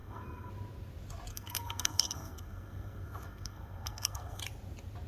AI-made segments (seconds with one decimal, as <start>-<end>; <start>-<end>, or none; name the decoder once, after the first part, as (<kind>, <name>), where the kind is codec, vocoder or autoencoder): 0.0-0.5 (codec, SNAC); 1.3-4.4